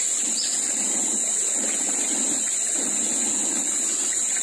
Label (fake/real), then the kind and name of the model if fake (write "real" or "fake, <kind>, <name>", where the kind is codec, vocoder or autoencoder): real